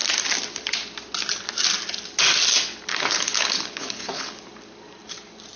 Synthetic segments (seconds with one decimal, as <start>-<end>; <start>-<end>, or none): 2.9-4.4